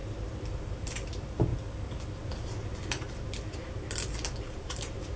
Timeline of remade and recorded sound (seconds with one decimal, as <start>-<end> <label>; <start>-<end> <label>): 0.0-0.5 recorded; 0.5-1.5 remade; 1.5-4.6 recorded; 4.6-5.2 remade